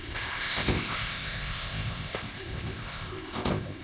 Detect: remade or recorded remade